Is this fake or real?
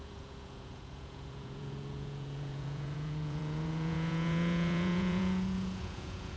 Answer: fake